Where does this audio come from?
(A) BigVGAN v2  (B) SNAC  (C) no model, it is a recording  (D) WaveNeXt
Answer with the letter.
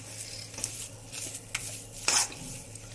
C